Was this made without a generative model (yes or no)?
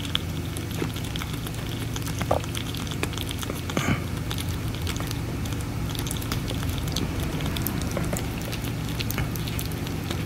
yes